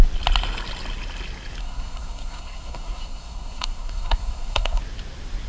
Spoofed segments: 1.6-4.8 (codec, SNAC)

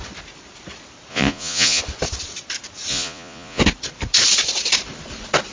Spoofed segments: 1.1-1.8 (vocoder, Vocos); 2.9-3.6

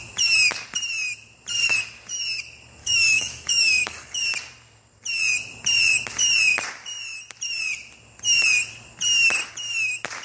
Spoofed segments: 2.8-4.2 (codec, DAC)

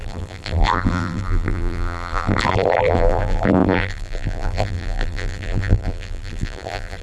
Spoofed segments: 0.0-7.0 (vocoder, BigVGAN v2)

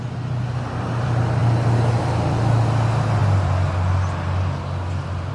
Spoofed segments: none